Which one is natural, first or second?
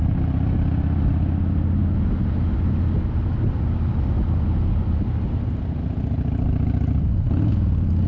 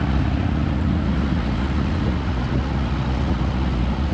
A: first